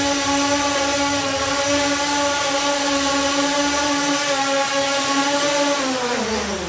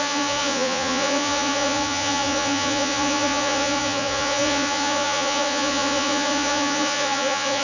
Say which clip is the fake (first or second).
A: second